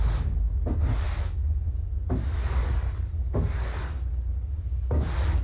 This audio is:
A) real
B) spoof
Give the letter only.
A